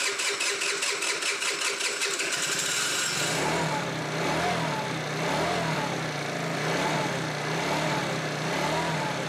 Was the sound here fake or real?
real